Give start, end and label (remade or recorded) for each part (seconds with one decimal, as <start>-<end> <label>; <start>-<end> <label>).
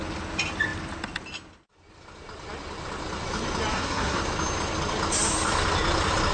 0.0-3.7 recorded; 3.7-4.2 remade; 4.2-6.3 recorded